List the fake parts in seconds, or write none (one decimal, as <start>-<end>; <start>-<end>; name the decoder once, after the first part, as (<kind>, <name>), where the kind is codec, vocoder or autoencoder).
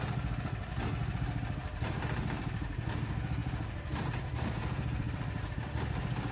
3.4-5.5 (vocoder, BigVGAN v2)